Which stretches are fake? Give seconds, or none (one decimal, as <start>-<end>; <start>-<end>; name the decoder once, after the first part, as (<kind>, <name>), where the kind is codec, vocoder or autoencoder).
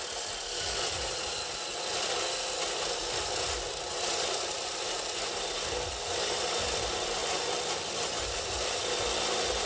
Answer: none